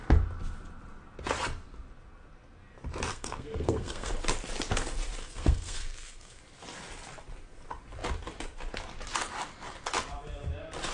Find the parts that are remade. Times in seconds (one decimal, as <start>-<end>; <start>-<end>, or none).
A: 3.1-4.1; 5.2-6.4